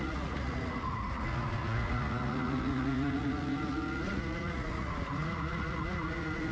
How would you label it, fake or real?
fake